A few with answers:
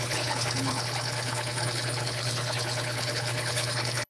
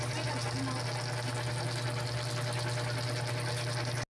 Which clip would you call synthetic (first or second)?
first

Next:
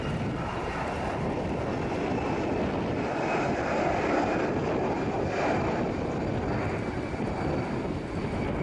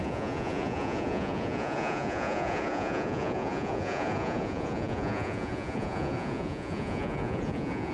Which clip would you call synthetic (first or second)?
second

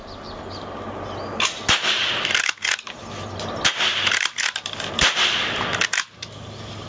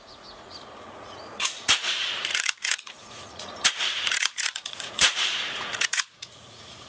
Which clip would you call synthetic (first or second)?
second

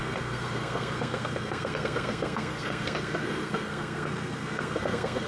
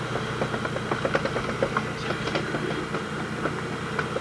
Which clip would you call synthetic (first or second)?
first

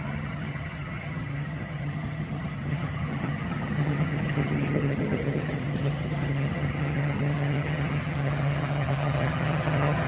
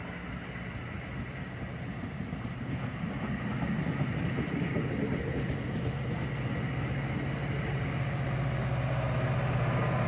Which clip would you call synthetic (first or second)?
first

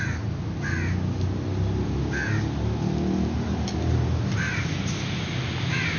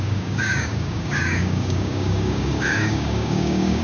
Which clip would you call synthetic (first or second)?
second